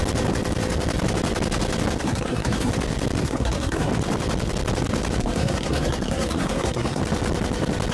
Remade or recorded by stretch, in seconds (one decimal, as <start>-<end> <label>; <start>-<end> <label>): 0.0-2.0 recorded; 2.0-2.7 remade; 2.7-3.2 recorded; 3.2-3.9 remade; 3.9-5.2 recorded; 5.2-7.0 remade; 7.0-7.9 recorded